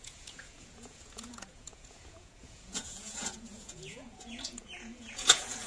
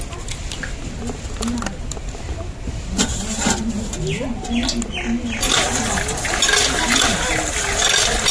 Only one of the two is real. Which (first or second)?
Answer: second